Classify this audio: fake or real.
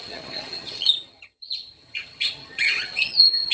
fake